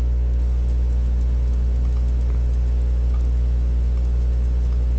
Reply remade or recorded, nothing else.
recorded